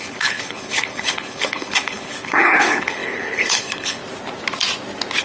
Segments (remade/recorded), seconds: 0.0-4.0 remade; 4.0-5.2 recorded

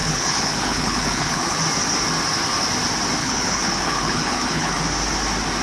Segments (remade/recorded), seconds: 0.0-1.6 remade; 1.6-3.2 recorded; 3.2-4.8 remade; 4.8-5.6 recorded

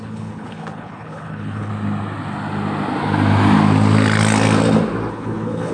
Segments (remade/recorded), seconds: 0.0-1.7 remade; 1.7-5.1 recorded; 5.1-5.7 remade

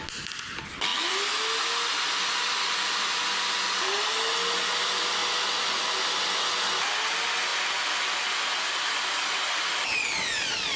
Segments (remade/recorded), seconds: 0.0-10.8 recorded

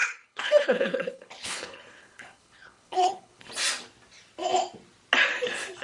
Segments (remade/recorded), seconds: 0.0-3.5 remade; 3.5-5.8 recorded

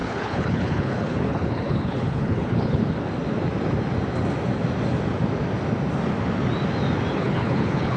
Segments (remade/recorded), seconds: 0.0-2.8 remade; 2.8-7.1 recorded; 7.1-8.0 remade

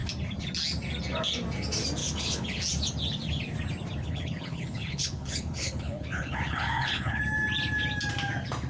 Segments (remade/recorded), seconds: 0.0-2.0 recorded; 2.0-2.6 remade; 2.6-4.0 recorded; 4.0-7.2 remade; 7.2-8.7 recorded

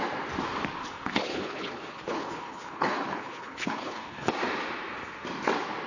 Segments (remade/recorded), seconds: 0.0-0.8 recorded; 0.8-4.3 remade; 4.3-5.9 recorded